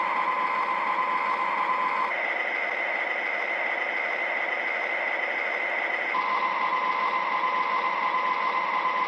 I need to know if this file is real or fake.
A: real